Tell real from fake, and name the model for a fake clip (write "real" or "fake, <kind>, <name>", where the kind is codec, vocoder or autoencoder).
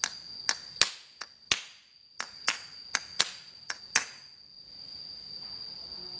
real